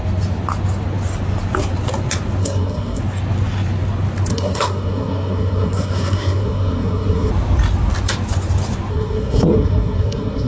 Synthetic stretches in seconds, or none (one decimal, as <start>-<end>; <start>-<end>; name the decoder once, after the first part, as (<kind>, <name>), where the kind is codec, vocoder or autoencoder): 2.4-3.0 (codec, SNAC); 4.3-7.3; 8.9-10.5